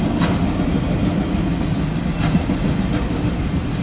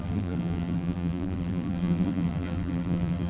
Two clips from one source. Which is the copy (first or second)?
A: second